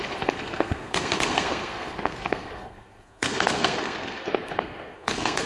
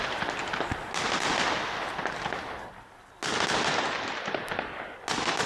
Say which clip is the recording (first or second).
second